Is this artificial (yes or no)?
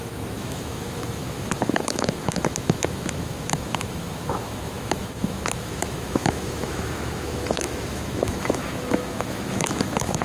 yes